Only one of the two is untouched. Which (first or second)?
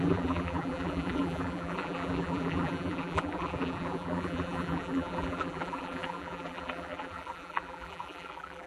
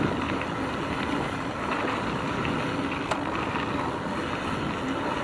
second